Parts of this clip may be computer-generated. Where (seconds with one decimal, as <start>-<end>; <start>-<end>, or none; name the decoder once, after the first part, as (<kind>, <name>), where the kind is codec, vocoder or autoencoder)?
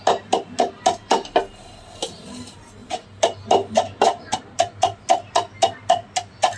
none